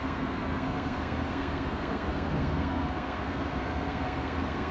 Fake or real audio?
fake